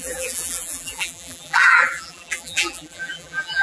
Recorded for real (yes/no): no